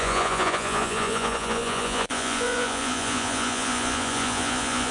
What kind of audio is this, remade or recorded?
remade